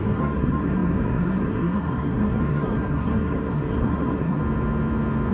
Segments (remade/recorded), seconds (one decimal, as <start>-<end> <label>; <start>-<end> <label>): 0.0-4.4 remade; 4.4-5.3 recorded